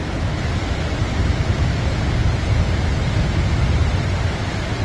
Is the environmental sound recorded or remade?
recorded